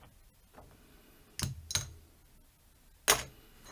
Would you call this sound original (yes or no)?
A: yes